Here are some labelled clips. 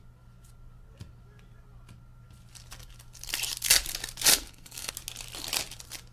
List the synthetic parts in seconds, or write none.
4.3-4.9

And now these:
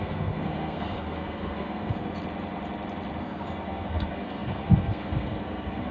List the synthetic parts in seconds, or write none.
0.0-2.1; 3.2-5.9

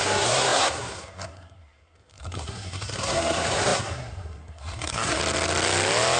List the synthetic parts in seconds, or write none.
0.0-5.2

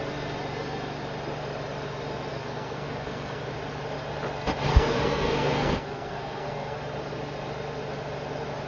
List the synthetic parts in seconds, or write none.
2.3-3.4; 4.7-6.8